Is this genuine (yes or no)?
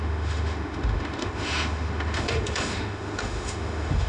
no